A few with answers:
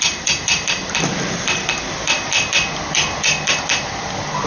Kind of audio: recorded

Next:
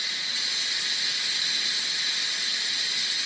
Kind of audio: recorded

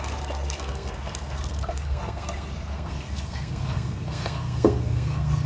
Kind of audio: remade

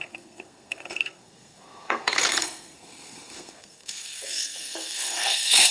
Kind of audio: remade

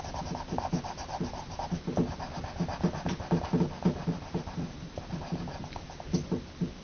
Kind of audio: recorded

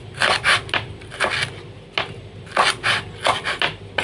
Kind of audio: recorded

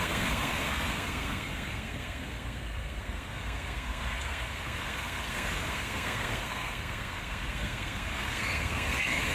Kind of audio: remade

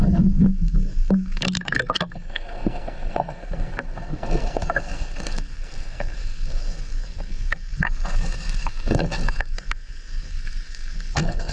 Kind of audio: remade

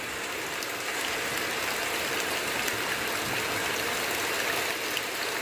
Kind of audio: recorded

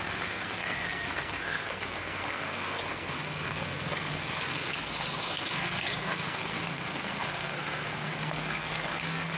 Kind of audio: remade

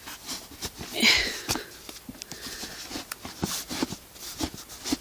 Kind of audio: recorded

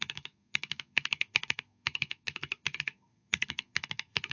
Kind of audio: remade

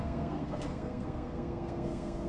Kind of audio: remade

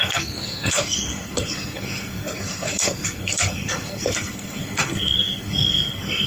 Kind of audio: remade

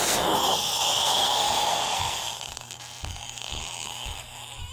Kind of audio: remade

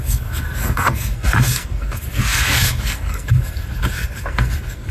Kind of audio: remade